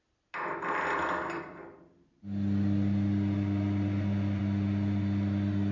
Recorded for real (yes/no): yes